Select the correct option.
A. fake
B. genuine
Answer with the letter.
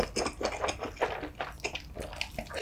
B